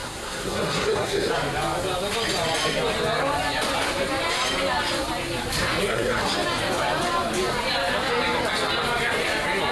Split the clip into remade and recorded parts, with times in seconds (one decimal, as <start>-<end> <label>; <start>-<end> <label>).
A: 0.0-1.3 remade; 1.3-5.8 recorded; 5.8-6.3 remade; 6.3-9.7 recorded